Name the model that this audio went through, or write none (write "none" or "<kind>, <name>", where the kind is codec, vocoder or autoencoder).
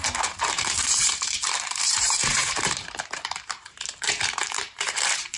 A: vocoder, BigVGAN v2